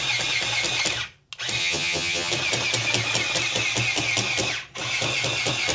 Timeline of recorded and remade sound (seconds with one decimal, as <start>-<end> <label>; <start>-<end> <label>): 0.0-1.6 recorded; 1.6-2.3 remade; 2.3-5.7 recorded